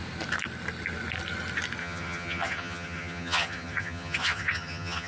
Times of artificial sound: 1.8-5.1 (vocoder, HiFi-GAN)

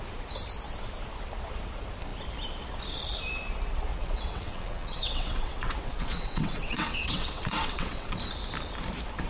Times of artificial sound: 3.9-8.1 (vocoder, WaveNeXt)

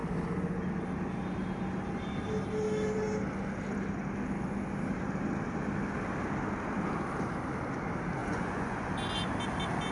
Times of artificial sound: 8.2-8.9 (vocoder, Vocos)

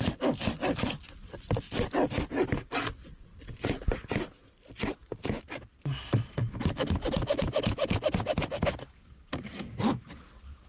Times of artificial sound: none